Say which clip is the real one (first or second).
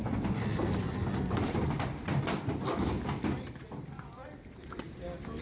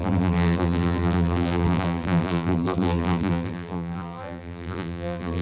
first